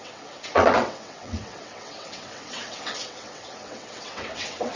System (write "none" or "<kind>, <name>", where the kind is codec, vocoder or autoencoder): vocoder, WaveNeXt